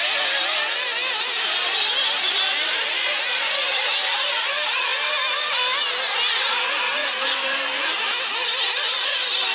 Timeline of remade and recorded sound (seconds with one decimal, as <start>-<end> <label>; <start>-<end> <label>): 0.0-2.5 recorded; 2.5-3.2 remade; 3.2-7.0 recorded; 7.0-8.1 remade; 8.1-9.5 recorded